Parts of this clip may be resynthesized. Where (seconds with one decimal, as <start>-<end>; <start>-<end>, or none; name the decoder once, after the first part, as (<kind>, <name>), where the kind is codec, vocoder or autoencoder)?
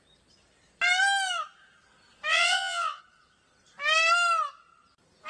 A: 2.3-3.0 (vocoder, WaveNeXt)